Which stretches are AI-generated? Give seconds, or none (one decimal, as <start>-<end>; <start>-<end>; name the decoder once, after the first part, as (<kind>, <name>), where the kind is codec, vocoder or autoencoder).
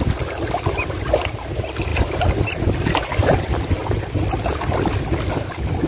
none